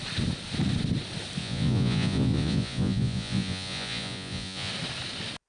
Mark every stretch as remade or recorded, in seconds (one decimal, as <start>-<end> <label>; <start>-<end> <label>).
0.0-1.4 recorded; 1.4-4.7 remade; 4.7-5.5 recorded